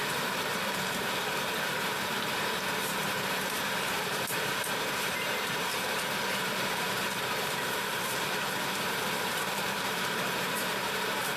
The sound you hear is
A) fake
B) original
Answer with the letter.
A